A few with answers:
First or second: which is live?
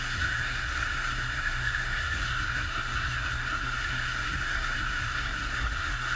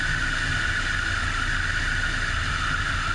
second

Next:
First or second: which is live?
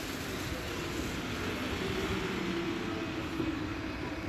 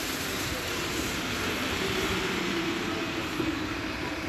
first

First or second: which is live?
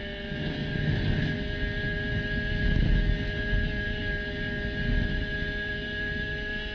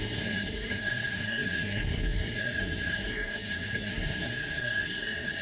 first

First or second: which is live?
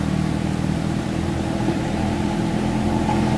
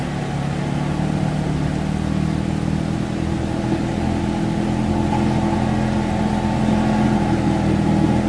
second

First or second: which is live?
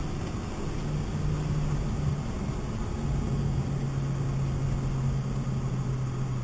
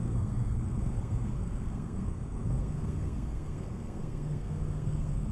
first